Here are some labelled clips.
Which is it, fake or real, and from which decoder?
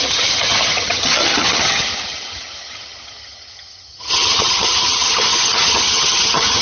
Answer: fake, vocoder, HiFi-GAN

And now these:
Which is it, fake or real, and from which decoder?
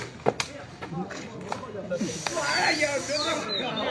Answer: real